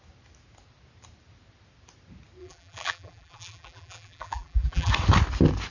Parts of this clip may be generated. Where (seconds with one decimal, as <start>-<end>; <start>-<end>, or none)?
2.4-4.9